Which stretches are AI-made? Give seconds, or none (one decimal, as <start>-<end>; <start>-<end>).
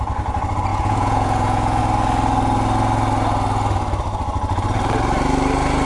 0.7-1.8